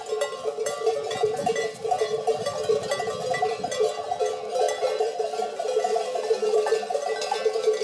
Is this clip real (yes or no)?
yes